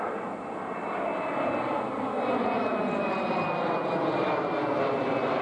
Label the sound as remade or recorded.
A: recorded